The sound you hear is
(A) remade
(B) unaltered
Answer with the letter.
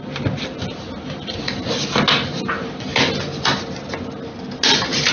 B